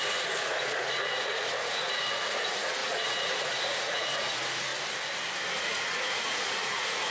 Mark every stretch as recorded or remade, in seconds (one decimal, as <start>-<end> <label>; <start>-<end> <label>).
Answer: 0.0-4.7 remade; 4.7-5.6 recorded; 5.6-7.1 remade